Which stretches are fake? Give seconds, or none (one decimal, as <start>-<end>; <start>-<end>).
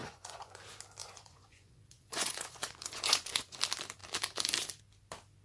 0.0-0.6; 1.0-3.6